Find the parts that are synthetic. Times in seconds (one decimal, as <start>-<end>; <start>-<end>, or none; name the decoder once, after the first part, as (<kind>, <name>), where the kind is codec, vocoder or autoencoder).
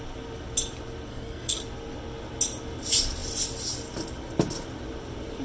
1.1-1.6 (codec, SNAC)